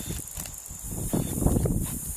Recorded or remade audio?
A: remade